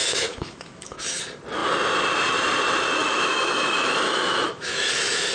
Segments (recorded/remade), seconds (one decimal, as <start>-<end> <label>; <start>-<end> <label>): 0.0-1.2 remade; 1.2-3.0 recorded; 3.0-5.3 remade